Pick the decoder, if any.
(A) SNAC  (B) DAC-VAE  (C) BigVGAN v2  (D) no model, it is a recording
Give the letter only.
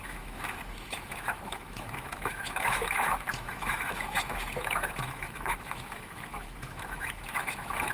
B